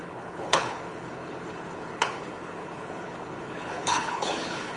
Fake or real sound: fake